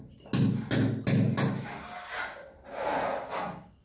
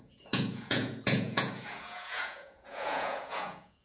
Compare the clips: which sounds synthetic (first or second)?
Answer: second